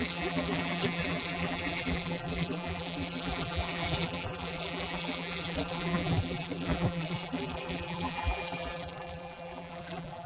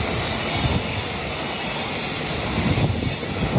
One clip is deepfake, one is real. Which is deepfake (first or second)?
first